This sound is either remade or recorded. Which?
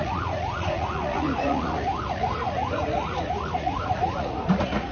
remade